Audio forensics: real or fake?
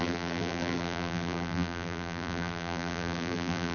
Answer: fake